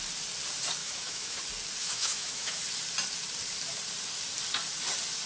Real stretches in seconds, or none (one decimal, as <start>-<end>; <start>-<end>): 0.0-0.8; 1.4-1.8; 2.6-5.3